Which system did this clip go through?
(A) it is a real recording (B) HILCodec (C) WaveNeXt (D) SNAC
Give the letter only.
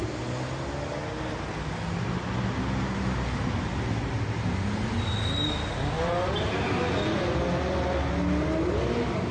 A